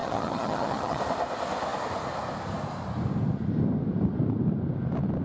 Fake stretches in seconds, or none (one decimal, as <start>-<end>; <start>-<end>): 0.0-1.0